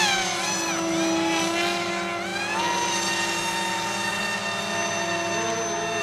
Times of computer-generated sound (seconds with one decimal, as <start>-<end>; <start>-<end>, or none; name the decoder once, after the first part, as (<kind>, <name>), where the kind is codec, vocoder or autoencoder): none